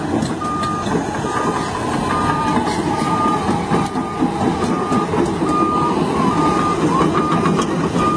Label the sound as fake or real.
real